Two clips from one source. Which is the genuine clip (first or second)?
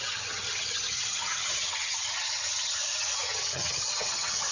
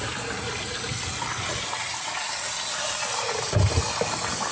second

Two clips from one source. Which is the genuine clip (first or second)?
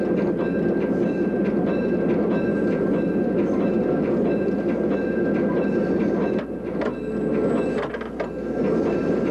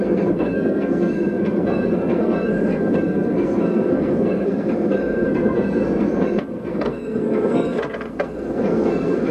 first